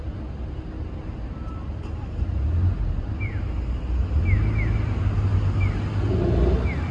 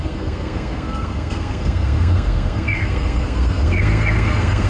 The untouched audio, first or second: first